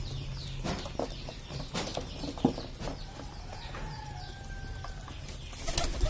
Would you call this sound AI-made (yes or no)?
no